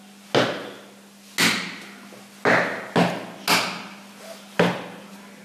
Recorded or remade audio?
recorded